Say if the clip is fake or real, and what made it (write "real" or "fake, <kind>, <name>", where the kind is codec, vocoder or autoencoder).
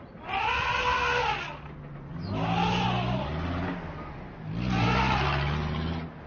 real